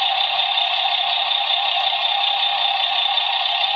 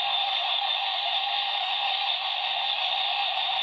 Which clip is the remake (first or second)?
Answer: second